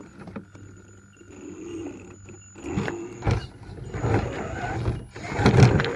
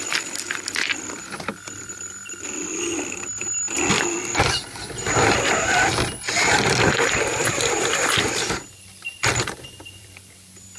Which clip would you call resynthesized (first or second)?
second